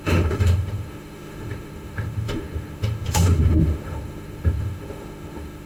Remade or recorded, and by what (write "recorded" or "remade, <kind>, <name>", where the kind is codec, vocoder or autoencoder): remade, autoencoder, DAC-VAE